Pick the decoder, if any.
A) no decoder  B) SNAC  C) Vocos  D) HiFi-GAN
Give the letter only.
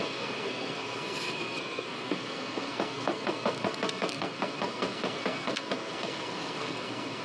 B